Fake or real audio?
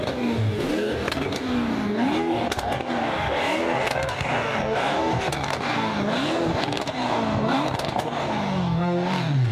fake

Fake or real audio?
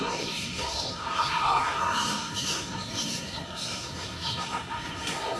fake